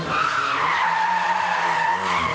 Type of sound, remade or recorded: recorded